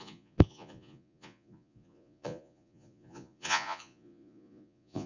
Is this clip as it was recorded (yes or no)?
no